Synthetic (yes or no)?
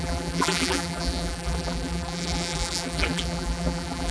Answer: yes